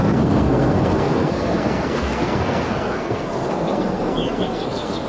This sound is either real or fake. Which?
fake